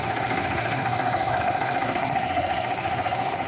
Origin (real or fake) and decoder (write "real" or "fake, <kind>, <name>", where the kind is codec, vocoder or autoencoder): fake, codec, SNAC